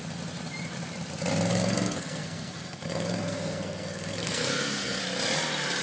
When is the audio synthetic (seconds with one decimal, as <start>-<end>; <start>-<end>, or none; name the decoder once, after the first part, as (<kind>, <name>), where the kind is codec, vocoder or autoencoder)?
1.5-5.0 (codec, SNAC)